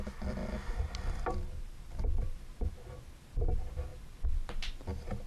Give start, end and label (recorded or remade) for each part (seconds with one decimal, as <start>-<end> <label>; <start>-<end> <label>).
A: 0.0-0.4 recorded; 0.4-2.7 remade; 2.7-3.9 recorded; 3.9-4.8 remade; 4.8-5.3 recorded